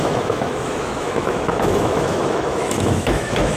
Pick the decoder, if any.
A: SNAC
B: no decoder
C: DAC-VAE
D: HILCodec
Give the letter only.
C